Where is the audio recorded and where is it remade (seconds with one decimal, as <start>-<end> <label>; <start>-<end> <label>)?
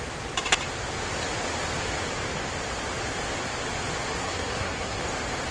0.0-4.2 recorded; 4.2-5.0 remade; 5.0-5.5 recorded